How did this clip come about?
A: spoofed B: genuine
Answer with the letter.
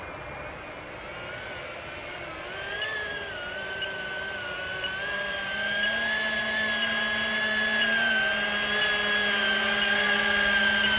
B